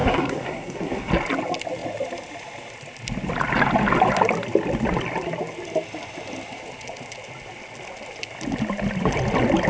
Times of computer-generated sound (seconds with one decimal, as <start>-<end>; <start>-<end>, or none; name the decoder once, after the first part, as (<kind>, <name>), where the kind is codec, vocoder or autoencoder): 0.0-1.1 (codec, SNAC)